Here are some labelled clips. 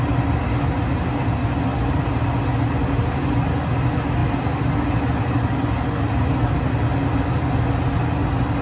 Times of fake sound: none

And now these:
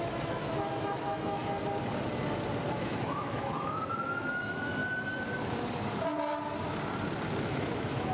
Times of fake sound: 0.0-1.4; 2.7-4.8; 7.4-8.1

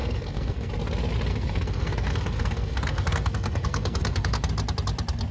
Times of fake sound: 0.0-0.7; 1.3-4.5

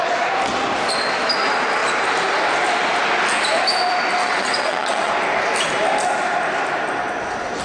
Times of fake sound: 4.2-5.1

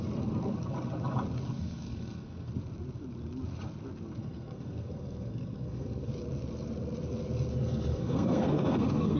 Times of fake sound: 1.5-2.5; 4.2-6.1; 7.5-9.2

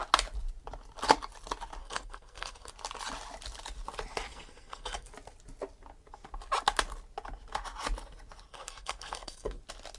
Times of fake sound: 1.8-2.7; 4.3-5.1; 8.5-9.6

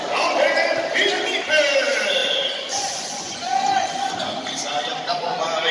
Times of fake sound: 2.2-4.0

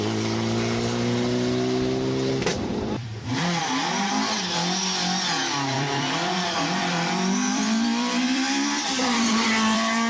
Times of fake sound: 2.5-3.6; 5.4-10.1